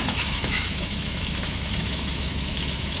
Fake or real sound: fake